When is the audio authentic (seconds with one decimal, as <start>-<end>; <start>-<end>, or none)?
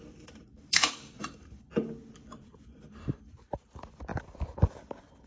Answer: 1.7-2.3